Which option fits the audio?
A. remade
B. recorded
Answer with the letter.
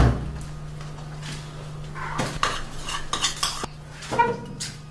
B